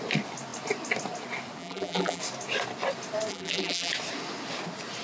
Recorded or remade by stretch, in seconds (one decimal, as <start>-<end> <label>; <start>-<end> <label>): 0.0-1.6 recorded; 1.6-2.2 remade; 2.2-3.3 recorded; 3.3-3.9 remade; 3.9-5.0 recorded